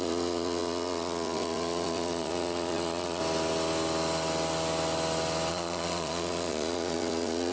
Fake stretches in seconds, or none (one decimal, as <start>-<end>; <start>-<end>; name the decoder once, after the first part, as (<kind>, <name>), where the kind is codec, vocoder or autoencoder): 0.0-3.2 (vocoder, Vocos); 5.5-7.5